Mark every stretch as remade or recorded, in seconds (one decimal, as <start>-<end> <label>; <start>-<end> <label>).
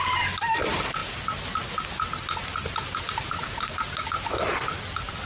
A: 0.0-5.3 recorded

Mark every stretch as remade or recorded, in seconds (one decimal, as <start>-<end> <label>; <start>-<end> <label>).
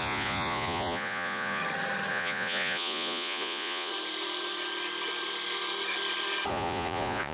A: 0.0-1.6 remade; 1.6-2.1 recorded; 2.1-3.9 remade; 3.9-6.5 recorded; 6.5-7.3 remade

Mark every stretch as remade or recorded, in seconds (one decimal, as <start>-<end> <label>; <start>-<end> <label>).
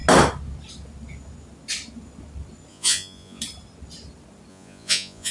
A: 0.0-2.7 recorded; 2.7-3.4 remade; 3.4-4.5 recorded; 4.5-5.3 remade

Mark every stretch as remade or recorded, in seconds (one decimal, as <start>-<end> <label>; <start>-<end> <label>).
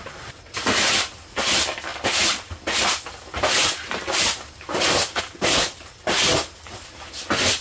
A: 0.0-7.6 recorded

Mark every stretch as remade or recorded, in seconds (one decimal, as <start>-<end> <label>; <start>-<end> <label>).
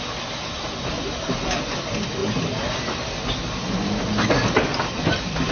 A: 0.0-5.5 recorded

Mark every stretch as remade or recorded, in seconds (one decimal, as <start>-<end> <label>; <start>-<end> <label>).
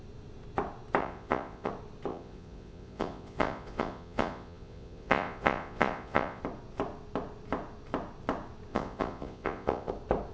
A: 0.0-1.0 recorded; 1.0-1.7 remade; 1.7-2.1 recorded; 2.1-6.4 remade; 6.4-8.7 recorded; 8.7-9.9 remade; 9.9-10.3 recorded